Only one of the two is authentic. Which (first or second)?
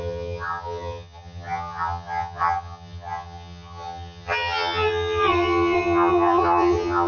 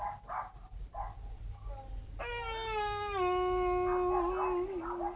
second